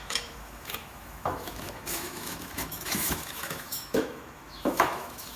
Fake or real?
fake